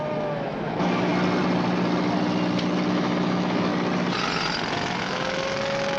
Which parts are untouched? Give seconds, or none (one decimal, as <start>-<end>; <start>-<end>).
1.1-2.9; 3.7-5.0